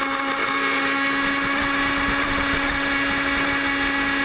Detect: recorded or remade recorded